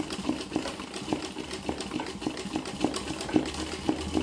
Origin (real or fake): real